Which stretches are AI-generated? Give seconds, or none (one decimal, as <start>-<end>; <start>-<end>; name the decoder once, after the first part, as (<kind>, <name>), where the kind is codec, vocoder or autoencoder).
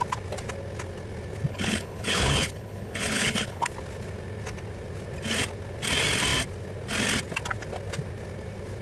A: 1.5-3.7 (codec, HILCodec)